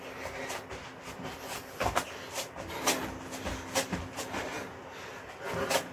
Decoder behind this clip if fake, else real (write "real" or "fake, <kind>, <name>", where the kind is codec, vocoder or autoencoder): real